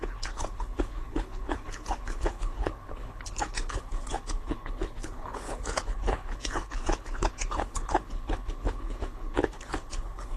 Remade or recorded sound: remade